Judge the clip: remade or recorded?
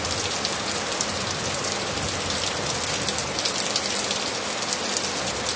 recorded